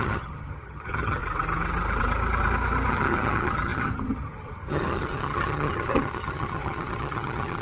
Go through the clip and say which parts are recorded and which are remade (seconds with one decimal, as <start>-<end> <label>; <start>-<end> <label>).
0.0-1.2 remade; 1.2-2.9 recorded; 2.9-7.6 remade